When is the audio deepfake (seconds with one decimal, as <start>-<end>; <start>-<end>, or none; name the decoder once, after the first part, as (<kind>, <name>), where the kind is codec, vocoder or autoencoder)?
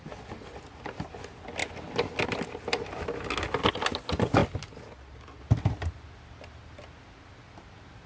none